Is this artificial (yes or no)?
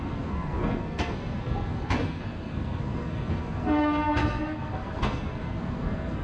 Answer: yes